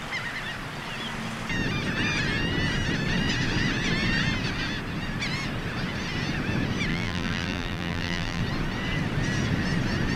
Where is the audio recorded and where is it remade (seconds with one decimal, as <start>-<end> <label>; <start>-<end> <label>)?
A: 0.0-6.9 recorded; 6.9-8.4 remade; 8.4-10.2 recorded